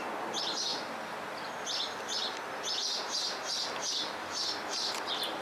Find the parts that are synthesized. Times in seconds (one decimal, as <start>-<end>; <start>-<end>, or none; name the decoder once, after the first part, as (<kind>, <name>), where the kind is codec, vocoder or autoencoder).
none